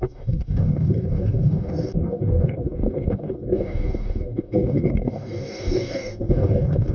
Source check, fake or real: fake